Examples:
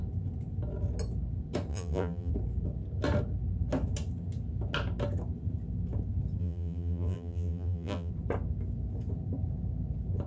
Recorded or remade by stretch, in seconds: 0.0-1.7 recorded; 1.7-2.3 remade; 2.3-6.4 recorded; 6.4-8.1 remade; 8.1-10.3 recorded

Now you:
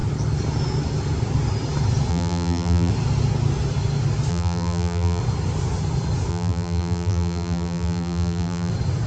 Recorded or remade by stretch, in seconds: 0.0-2.1 recorded; 2.1-2.9 remade; 2.9-4.3 recorded; 4.3-5.2 remade; 5.2-6.3 recorded; 6.3-8.7 remade; 8.7-9.1 recorded

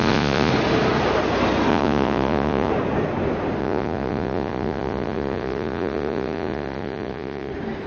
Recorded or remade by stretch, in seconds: 0.0-0.5 remade; 0.5-1.7 recorded; 1.7-2.7 remade; 2.7-3.6 recorded; 3.6-7.5 remade; 7.5-7.9 recorded

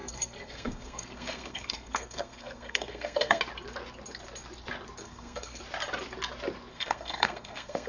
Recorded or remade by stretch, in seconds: 0.0-3.4 remade; 3.4-5.0 recorded; 5.0-5.6 remade; 5.6-6.7 recorded; 6.7-7.9 remade

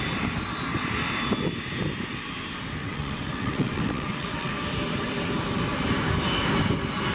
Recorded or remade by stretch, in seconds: 0.0-2.8 recorded; 2.8-4.5 remade; 4.5-7.1 recorded

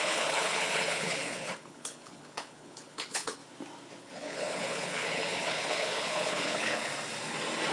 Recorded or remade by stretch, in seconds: 0.0-3.4 remade; 3.4-4.0 recorded; 4.0-6.9 remade; 6.9-7.7 recorded

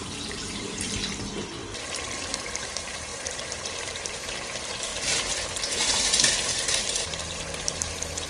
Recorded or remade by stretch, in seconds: 0.0-1.6 remade; 1.6-2.6 recorded; 2.6-4.9 remade; 4.9-5.5 recorded; 5.5-8.3 remade